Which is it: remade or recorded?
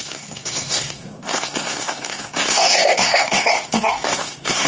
remade